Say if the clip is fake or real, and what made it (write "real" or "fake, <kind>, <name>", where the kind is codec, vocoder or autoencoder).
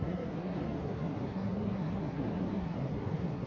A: fake, codec, SNAC